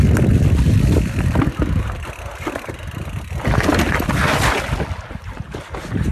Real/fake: real